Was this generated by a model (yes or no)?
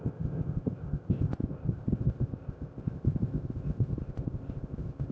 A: yes